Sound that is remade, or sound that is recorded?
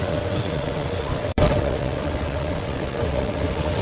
remade